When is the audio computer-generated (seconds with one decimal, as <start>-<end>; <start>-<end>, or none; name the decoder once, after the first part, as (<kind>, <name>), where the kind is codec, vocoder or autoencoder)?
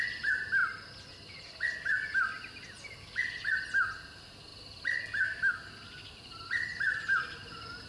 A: 6.7-7.9 (vocoder, BigVGAN v2)